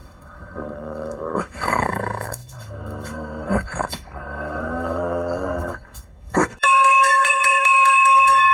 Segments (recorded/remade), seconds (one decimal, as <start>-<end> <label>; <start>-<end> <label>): 0.0-8.5 remade